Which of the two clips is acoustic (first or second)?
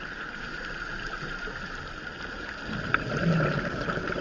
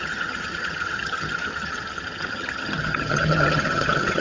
first